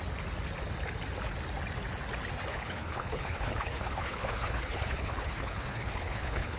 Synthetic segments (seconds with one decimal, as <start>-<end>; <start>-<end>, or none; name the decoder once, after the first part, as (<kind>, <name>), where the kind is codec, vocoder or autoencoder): 2.5-6.6 (codec, HILCodec)